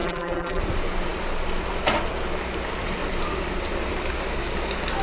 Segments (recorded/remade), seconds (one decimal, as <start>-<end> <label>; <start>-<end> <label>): 0.0-0.6 remade; 0.6-5.0 recorded